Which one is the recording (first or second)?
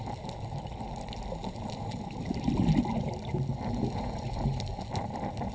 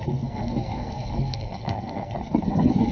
first